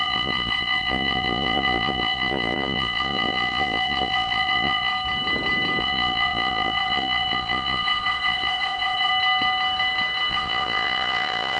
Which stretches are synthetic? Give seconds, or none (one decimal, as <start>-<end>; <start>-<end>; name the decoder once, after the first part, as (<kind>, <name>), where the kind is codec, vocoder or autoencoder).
0.0-4.9 (vocoder, Vocos); 5.8-9.1; 10.3-11.6